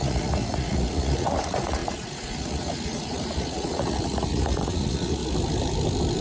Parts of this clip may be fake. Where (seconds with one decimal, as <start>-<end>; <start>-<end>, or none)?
0.0-5.2